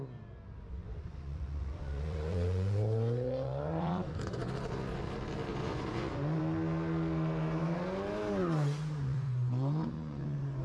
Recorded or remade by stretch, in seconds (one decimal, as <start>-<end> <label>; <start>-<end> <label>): 0.0-0.8 recorded; 0.8-4.5 remade; 4.5-5.5 recorded; 5.5-6.4 remade; 6.4-8.4 recorded; 8.4-10.6 remade